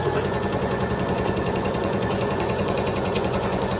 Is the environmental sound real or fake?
fake